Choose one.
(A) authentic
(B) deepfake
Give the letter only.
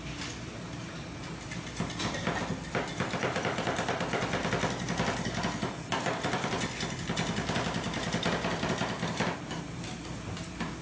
A